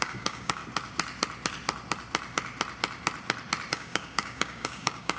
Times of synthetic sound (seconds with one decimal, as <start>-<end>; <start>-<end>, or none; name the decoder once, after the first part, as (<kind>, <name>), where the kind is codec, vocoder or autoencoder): 0.0-0.6 (codec, DAC); 3.7-5.2